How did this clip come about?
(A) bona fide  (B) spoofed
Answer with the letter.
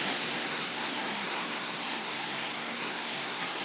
B